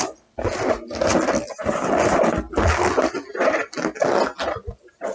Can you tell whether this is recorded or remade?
recorded